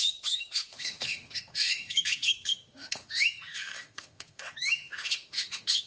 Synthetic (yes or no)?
yes